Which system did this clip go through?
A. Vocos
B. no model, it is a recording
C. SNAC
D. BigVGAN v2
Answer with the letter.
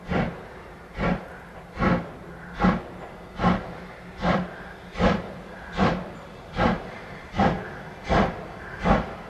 B